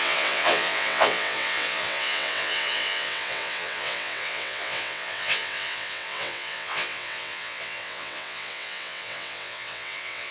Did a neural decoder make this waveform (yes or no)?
yes